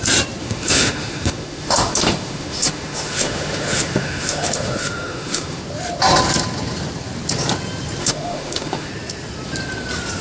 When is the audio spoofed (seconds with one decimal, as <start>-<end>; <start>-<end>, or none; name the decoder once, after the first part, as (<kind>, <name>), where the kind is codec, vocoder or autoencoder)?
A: 0.4-5.6 (autoencoder, DAC-VAE); 8.0-8.9